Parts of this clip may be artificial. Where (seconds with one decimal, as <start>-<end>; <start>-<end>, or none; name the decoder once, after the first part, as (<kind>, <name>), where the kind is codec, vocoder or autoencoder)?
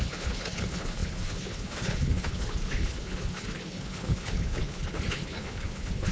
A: 0.0-6.1 (codec, HILCodec)